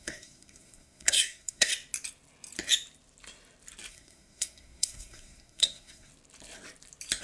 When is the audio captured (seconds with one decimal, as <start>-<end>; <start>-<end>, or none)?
1.7-3.9; 6.1-7.2